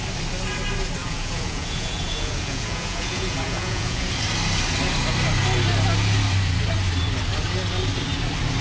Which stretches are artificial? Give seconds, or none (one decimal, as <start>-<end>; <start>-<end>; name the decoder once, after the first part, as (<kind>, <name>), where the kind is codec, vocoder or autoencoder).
1.0-4.1 (vocoder, Vocos)